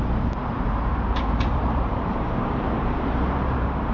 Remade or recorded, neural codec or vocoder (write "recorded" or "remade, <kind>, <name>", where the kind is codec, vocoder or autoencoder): remade, vocoder, BigVGAN v2